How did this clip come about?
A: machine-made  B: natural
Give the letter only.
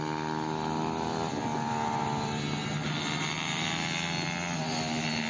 B